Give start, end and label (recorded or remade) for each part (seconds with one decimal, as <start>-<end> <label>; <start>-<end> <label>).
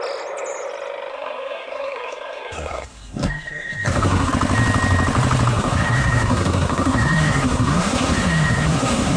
0.0-1.1 recorded; 1.1-4.3 remade; 4.3-5.5 recorded; 5.5-9.2 remade